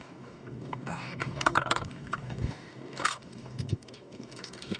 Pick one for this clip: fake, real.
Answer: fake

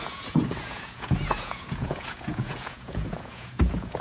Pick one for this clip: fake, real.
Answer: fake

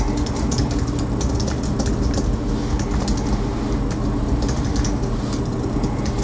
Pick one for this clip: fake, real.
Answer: real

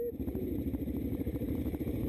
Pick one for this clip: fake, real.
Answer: fake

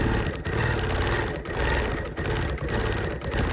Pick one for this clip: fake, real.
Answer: real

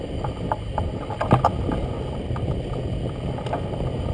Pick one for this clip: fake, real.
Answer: real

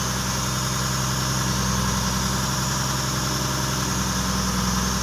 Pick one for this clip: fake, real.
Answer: real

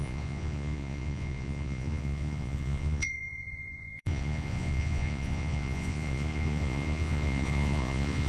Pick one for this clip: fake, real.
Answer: fake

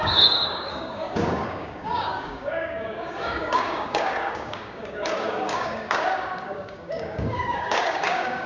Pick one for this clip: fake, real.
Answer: fake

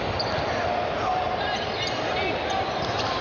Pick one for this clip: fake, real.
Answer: real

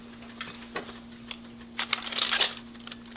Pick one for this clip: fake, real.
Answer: real